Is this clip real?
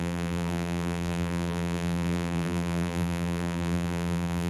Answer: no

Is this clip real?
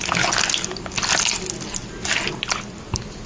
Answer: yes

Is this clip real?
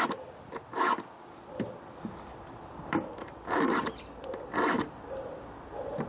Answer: yes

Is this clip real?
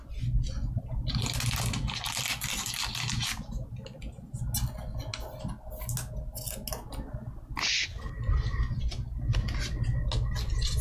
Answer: yes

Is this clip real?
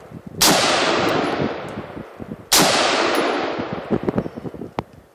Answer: yes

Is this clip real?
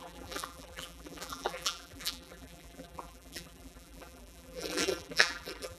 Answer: no